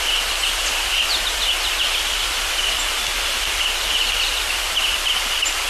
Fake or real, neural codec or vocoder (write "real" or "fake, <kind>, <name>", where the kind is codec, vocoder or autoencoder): real